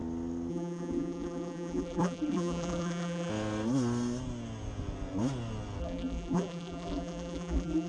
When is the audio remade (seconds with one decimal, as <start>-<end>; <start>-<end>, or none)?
0.5-3.3; 5.8-7.9